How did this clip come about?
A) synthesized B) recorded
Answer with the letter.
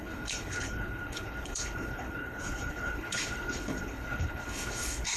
A